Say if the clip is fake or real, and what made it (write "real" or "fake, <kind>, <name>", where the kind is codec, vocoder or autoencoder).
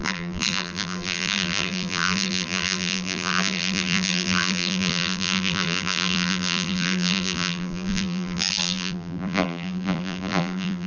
fake, vocoder, BigVGAN v2